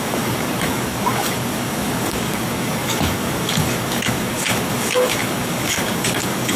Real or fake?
fake